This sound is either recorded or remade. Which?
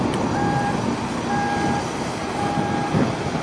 recorded